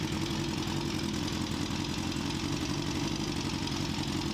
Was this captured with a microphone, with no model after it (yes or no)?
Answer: yes